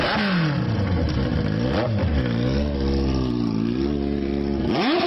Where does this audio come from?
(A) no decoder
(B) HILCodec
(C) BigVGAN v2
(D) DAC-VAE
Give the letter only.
A